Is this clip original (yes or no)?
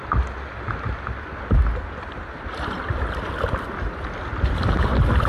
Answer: yes